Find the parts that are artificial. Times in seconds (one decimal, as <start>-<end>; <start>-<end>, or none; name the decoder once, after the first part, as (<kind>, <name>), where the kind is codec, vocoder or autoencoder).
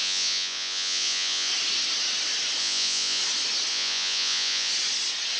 0.0-1.5 (vocoder, Vocos); 2.6-3.2; 3.7-4.7